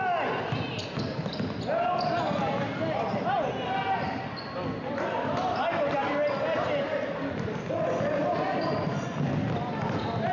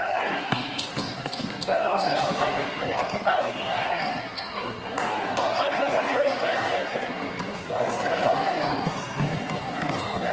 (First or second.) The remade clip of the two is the second